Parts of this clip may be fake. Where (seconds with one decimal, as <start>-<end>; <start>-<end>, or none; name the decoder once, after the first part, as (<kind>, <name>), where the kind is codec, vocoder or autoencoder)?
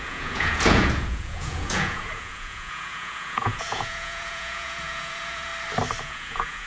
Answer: 0.0-5.5 (vocoder, Vocos); 6.0-6.7